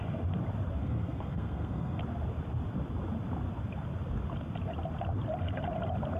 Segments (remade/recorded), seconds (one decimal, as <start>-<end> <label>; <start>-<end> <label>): 0.0-0.8 recorded; 0.8-2.0 remade; 2.0-6.2 recorded